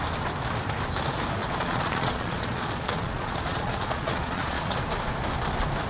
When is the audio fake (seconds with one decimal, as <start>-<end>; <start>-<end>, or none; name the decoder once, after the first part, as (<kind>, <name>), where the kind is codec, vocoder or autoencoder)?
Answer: 1.4-4.8 (vocoder, Vocos)